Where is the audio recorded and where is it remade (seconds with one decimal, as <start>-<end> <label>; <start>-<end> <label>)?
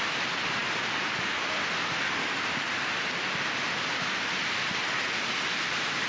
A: 0.0-6.1 recorded